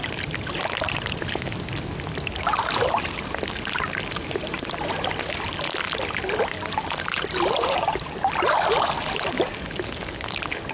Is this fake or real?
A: real